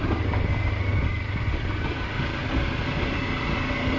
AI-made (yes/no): no